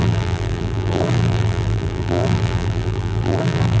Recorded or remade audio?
remade